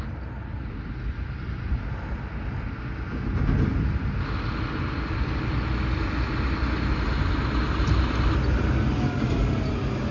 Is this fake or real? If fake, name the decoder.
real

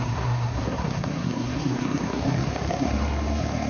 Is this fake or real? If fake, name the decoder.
fake, codec, SNAC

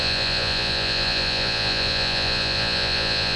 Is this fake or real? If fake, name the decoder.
fake, vocoder, Vocos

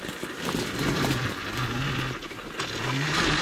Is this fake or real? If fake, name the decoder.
real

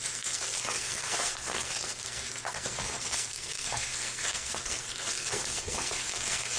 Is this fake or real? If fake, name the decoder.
fake, codec, SNAC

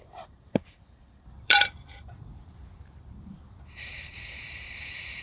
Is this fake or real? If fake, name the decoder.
fake, vocoder, BigVGAN v2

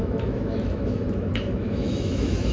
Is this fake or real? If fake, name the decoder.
fake, autoencoder, DAC-VAE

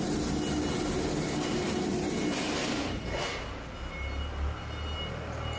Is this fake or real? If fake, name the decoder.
real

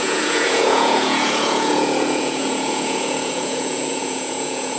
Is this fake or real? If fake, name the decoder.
fake, vocoder, Vocos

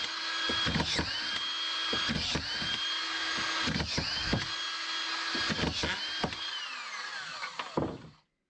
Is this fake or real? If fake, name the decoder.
real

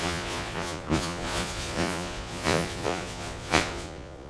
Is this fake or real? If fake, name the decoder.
fake, vocoder, Vocos